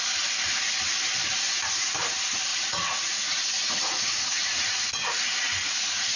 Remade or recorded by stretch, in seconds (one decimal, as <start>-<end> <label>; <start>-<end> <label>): 0.0-2.5 recorded; 2.5-6.2 remade

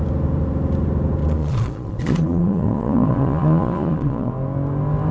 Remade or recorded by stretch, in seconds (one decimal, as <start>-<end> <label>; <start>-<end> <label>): 0.0-1.2 recorded; 1.2-4.3 remade; 4.3-5.1 recorded